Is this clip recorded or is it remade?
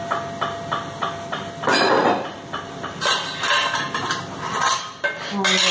recorded